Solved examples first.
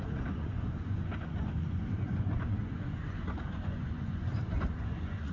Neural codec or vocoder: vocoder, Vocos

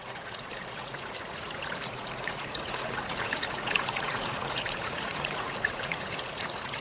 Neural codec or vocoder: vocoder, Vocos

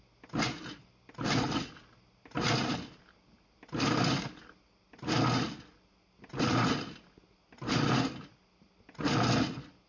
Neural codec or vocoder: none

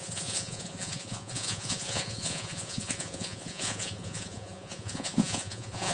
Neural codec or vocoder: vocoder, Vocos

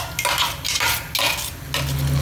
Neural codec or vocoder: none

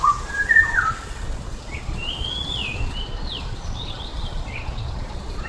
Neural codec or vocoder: vocoder, Vocos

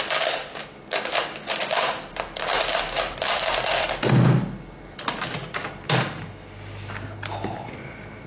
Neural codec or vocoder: none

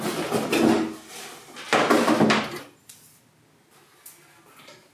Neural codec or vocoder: none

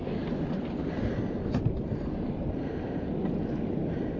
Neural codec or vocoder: none